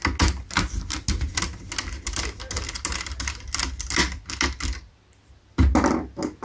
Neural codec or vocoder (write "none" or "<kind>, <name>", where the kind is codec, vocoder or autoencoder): none